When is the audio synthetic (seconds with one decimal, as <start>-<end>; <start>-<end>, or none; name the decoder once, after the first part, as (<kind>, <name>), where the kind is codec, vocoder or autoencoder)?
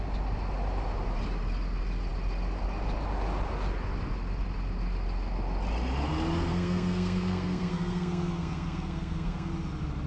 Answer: 6.5-9.5 (codec, SNAC)